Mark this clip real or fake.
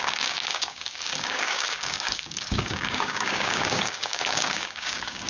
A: fake